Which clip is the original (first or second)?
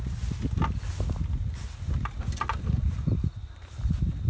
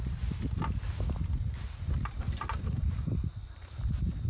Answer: first